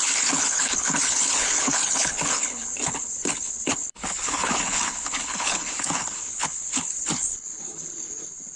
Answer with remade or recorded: remade